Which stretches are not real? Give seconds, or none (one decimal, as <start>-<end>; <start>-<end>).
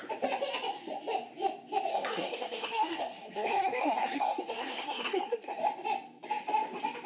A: 1.9-5.6